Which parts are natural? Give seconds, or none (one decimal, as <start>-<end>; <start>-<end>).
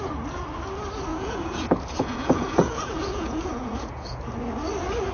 0.0-1.1; 4.2-5.1